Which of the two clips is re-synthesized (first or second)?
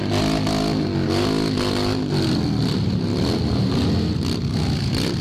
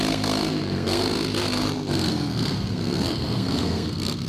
second